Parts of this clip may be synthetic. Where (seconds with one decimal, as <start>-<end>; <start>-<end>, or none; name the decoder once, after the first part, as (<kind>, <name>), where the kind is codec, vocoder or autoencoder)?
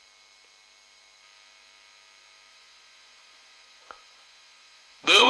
2.5-5.3 (vocoder, Vocos)